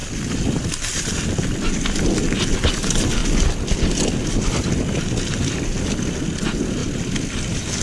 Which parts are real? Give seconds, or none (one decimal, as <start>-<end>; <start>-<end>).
1.2-6.8